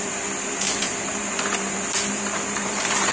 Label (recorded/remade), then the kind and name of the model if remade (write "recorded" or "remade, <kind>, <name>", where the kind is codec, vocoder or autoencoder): remade, vocoder, BigVGAN v2